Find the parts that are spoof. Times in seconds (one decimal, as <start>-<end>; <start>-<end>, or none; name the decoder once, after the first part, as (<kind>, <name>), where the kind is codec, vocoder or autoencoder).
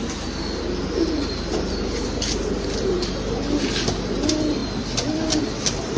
none